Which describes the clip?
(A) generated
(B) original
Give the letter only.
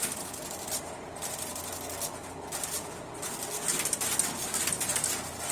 B